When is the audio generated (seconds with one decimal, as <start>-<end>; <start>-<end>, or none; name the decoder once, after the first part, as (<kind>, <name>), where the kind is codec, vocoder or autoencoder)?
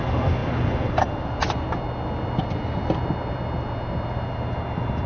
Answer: none